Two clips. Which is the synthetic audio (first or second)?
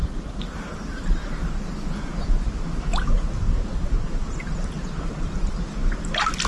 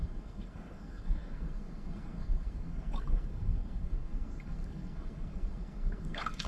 second